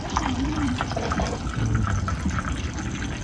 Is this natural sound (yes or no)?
yes